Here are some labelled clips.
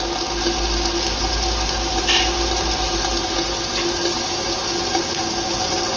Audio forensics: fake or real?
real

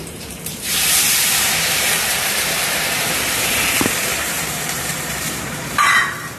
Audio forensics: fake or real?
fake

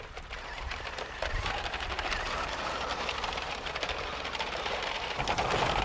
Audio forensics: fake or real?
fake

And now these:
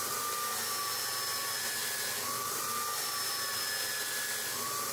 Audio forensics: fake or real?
real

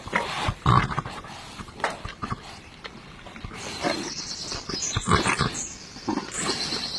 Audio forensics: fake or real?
fake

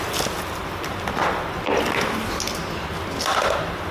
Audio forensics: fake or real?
real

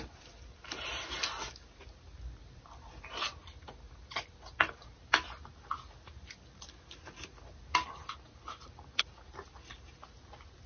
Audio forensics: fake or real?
real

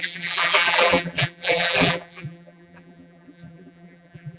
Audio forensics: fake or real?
fake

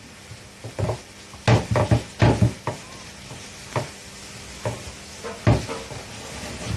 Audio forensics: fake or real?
real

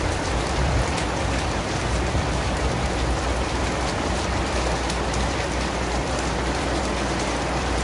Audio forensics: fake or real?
fake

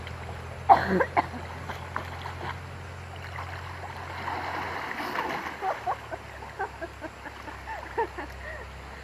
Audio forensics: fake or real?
real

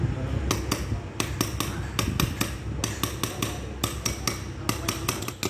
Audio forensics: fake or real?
real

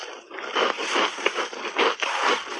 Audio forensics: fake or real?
fake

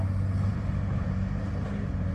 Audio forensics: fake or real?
real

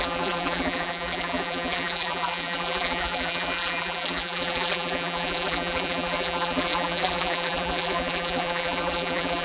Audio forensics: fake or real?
fake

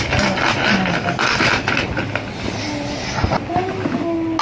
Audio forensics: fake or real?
real